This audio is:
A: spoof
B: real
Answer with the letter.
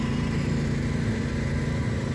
A